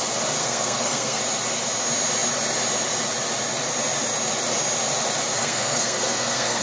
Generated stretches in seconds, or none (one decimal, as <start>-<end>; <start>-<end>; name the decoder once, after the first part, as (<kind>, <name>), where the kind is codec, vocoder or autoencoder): 0.4-1.2 (codec, SNAC); 5.4-6.6